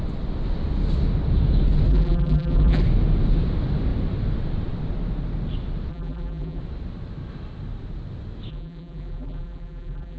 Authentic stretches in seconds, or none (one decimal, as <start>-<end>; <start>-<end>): 0.0-1.9; 2.8-5.9; 6.6-8.5